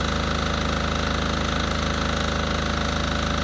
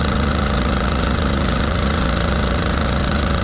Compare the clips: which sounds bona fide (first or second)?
first